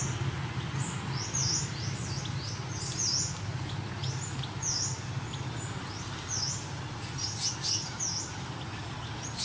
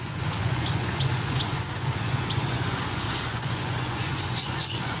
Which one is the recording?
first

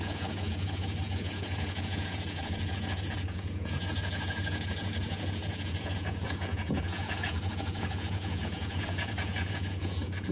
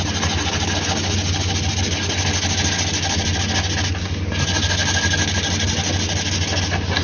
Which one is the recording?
second